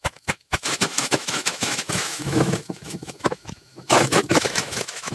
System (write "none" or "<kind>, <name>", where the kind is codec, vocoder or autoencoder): autoencoder, DAC-VAE